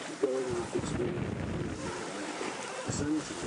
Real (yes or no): yes